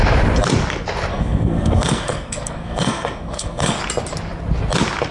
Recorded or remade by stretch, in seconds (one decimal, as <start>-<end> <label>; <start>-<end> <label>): 0.0-1.1 recorded; 1.1-3.8 remade; 3.8-5.1 recorded